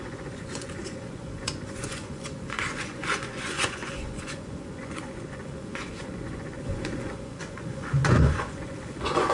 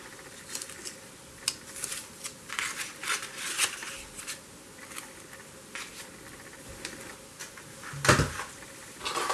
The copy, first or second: first